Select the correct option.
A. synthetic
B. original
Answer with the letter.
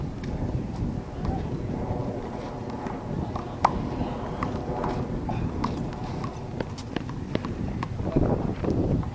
A